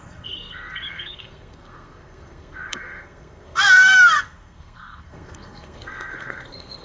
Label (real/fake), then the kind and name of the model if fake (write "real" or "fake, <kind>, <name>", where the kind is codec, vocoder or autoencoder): fake, codec, SNAC